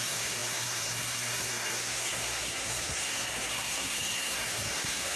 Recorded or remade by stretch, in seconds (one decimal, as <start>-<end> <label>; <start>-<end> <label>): 0.0-5.2 remade